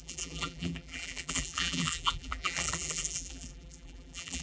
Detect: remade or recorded remade